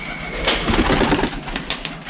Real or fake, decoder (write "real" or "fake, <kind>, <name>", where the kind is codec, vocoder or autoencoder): real